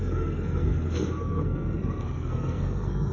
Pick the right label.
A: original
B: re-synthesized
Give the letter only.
B